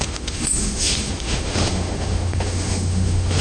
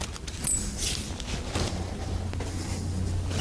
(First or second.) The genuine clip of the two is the second